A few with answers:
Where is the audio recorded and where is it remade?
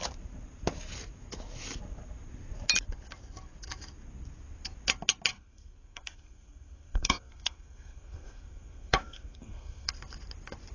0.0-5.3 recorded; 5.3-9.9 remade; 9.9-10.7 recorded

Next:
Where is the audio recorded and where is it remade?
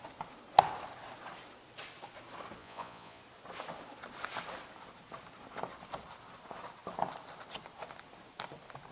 0.0-2.6 recorded; 2.6-3.2 remade; 3.2-8.9 recorded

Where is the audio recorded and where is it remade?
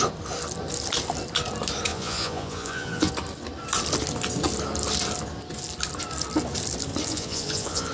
0.0-1.9 recorded; 1.9-3.1 remade; 3.1-7.1 recorded; 7.1-7.9 remade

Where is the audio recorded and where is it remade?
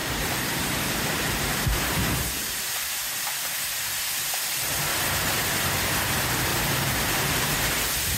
0.0-4.0 remade; 4.0-4.9 recorded; 4.9-5.7 remade; 5.7-6.5 recorded; 6.5-7.7 remade; 7.7-8.2 recorded